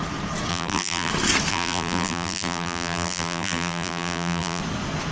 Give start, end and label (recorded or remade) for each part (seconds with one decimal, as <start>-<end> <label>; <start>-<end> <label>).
0.0-0.5 recorded; 0.5-1.1 remade; 1.1-1.5 recorded; 1.5-4.6 remade; 4.6-5.1 recorded